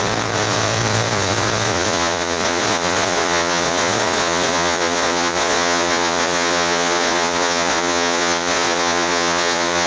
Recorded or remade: remade